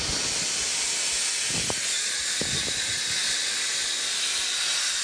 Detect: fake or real real